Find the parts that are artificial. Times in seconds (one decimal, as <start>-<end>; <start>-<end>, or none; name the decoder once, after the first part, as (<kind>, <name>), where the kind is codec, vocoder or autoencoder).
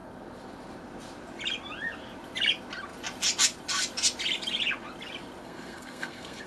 5.4-6.5 (codec, SNAC)